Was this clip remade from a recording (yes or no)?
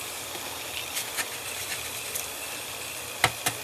no